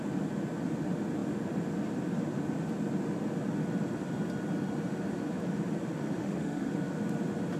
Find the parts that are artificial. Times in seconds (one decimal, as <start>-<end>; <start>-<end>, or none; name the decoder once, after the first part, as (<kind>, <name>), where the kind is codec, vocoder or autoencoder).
6.2-6.7 (autoencoder, DAC-VAE)